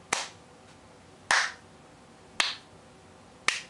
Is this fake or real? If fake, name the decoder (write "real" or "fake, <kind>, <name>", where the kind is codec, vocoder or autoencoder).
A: real